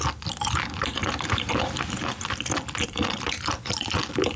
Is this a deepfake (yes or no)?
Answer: yes